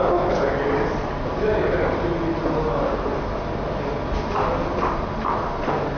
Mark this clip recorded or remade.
remade